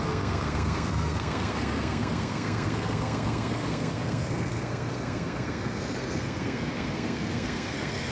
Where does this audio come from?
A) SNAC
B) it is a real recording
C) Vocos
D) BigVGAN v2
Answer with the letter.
A